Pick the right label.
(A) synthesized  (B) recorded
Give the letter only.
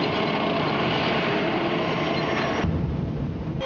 B